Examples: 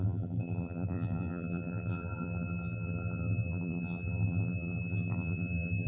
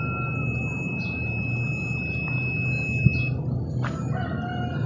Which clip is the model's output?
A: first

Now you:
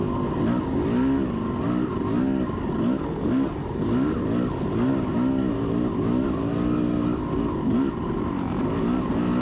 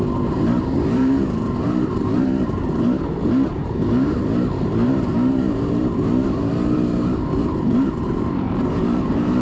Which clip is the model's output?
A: second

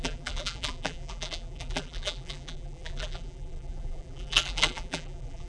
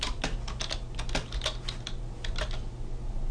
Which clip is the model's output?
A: first